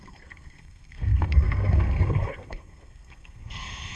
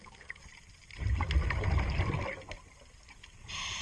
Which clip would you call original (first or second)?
second